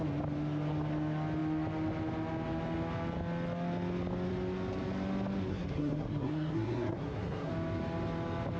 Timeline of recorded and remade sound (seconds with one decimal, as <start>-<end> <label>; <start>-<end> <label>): 0.0-5.5 recorded; 5.5-7.5 remade; 7.5-8.6 recorded